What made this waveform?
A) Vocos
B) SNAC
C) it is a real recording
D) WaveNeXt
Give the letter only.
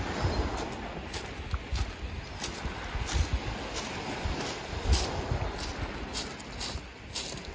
C